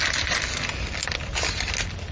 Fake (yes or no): no